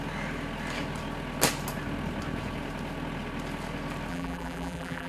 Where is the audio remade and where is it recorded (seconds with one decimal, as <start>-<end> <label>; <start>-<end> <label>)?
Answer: 0.0-4.1 recorded; 4.1-5.1 remade